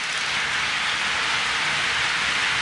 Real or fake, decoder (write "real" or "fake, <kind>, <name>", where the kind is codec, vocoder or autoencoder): real